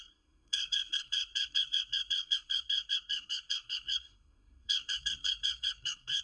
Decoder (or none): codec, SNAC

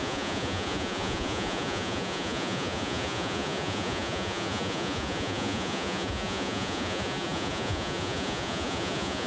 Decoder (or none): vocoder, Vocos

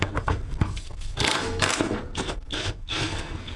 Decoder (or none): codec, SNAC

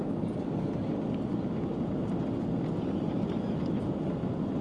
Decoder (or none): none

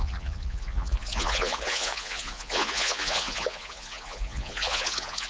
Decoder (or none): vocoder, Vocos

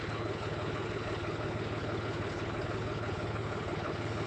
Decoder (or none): codec, HILCodec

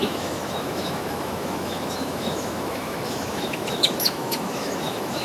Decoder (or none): autoencoder, DAC-VAE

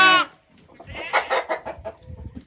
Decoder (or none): none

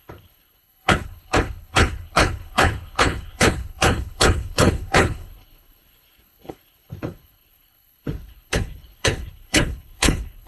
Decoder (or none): codec, HILCodec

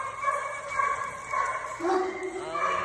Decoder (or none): none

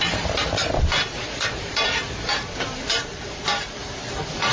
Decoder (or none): vocoder, BigVGAN v2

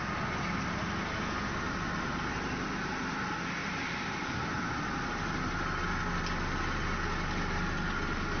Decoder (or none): none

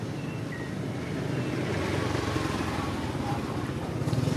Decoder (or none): none